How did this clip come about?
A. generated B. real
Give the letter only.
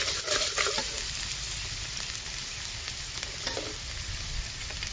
B